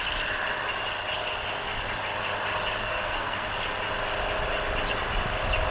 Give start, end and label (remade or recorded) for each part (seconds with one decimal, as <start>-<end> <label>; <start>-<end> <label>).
0.0-2.8 recorded; 2.8-3.5 remade; 3.5-5.7 recorded